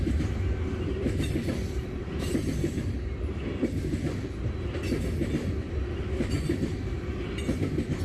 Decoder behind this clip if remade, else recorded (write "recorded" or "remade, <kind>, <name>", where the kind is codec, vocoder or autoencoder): recorded